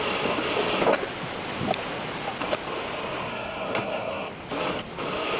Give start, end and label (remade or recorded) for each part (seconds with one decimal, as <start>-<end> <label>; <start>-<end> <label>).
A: 0.0-3.3 recorded; 3.3-4.3 remade; 4.3-5.4 recorded